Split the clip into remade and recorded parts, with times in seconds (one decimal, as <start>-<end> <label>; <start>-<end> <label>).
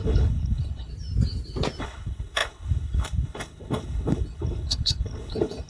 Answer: 0.0-0.9 remade; 0.9-1.8 recorded; 1.8-5.7 remade